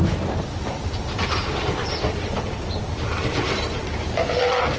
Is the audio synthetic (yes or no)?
no